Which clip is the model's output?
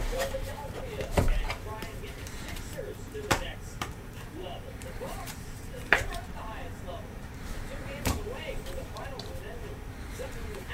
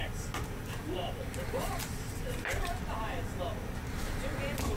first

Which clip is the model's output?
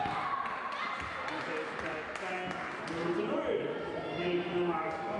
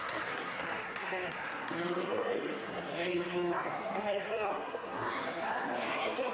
second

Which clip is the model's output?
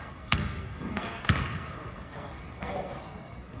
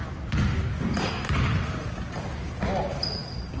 first